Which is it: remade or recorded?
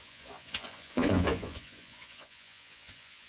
remade